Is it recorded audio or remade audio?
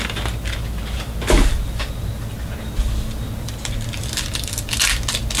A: recorded